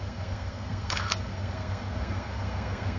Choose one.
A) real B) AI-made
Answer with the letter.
B